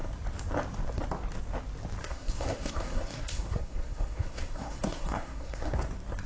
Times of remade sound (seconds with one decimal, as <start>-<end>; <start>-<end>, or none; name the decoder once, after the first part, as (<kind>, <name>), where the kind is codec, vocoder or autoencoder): 2.0-5.8 (codec, SNAC)